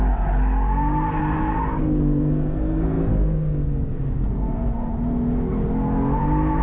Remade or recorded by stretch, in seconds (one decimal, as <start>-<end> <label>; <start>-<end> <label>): 0.0-1.8 recorded; 1.8-4.9 remade; 4.9-6.6 recorded